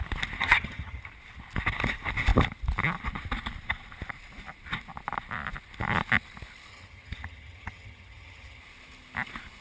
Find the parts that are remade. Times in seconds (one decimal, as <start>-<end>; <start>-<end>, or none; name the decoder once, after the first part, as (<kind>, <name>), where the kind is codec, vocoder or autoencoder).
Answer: 0.4-1.0 (vocoder, HiFi-GAN); 6.7-8.6